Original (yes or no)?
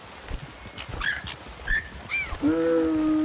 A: yes